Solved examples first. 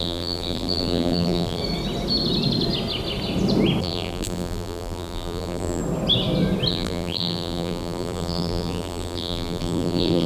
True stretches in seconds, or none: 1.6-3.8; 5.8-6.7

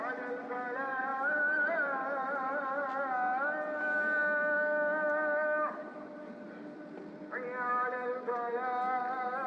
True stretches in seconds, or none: 0.0-0.9; 2.9-9.5